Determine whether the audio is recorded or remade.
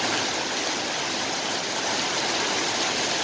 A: recorded